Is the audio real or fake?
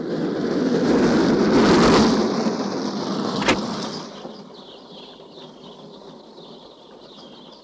real